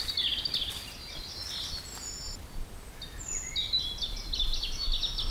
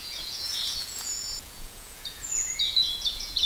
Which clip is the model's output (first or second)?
second